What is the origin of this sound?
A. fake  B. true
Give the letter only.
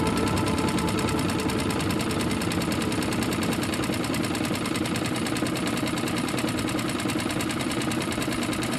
B